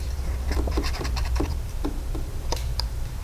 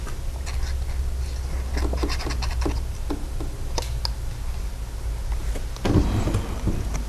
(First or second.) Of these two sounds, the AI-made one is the first